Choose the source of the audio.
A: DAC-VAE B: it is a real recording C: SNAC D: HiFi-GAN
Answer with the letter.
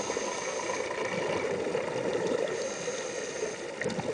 B